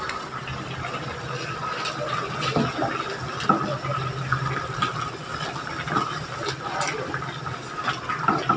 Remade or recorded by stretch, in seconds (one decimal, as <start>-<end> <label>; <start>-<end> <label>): 0.0-8.6 recorded